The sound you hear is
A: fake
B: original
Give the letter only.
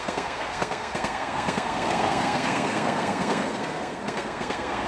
A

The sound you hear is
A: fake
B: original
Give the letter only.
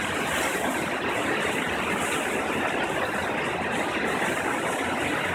B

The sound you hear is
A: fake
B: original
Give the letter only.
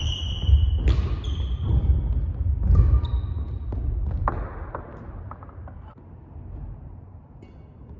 B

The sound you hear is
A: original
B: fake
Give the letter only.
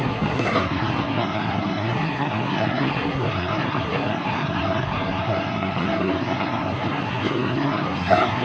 B